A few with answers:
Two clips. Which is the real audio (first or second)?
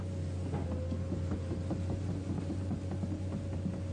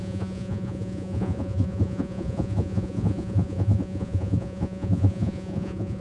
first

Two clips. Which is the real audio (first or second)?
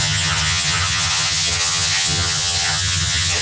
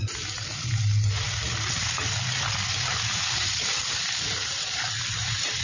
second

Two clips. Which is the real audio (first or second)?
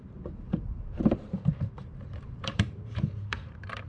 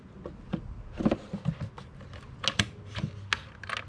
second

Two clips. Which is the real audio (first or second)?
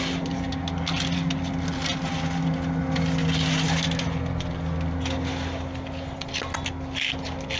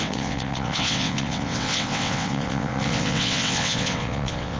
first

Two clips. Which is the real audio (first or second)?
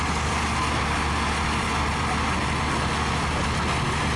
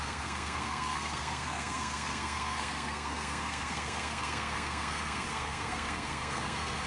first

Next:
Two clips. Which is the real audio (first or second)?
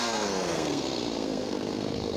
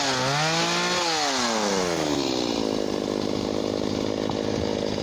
second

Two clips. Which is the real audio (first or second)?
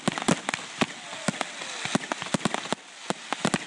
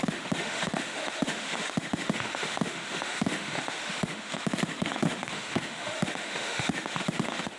first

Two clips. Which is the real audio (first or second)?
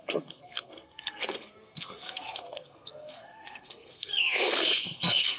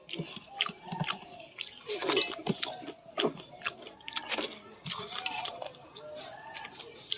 second